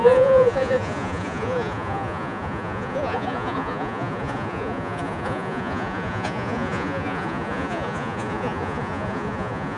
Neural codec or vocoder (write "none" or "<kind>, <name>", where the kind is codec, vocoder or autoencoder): vocoder, Vocos